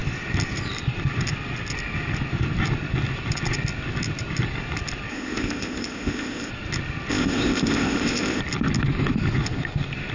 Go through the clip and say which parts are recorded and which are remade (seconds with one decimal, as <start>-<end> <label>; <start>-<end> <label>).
0.0-5.1 recorded; 5.1-6.5 remade; 6.5-7.1 recorded; 7.1-8.4 remade; 8.4-10.1 recorded